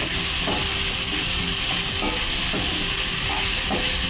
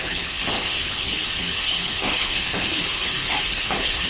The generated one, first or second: second